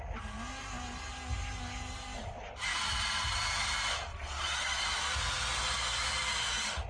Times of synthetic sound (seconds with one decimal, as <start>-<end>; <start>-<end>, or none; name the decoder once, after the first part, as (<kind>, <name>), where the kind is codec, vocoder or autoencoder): 4.1-4.8 (vocoder, Vocos)